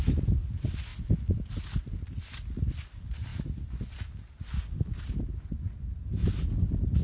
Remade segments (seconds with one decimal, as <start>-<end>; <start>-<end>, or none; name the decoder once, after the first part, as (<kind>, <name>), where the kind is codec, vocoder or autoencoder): none